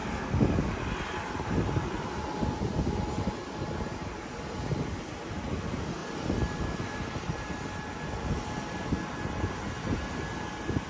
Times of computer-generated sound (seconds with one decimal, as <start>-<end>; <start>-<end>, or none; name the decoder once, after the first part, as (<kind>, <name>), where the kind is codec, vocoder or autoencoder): 0.0-1.3 (vocoder, BigVGAN v2); 6.0-6.6